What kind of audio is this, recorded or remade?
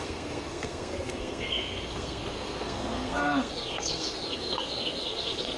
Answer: remade